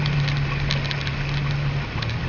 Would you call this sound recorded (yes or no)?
yes